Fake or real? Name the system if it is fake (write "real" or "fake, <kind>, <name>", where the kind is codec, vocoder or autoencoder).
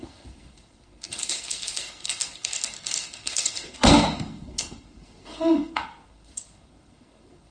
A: fake, codec, SNAC